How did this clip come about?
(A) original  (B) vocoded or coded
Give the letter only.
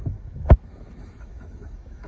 B